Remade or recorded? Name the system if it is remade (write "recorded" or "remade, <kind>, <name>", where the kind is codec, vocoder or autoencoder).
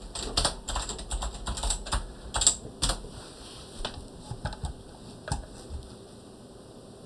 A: recorded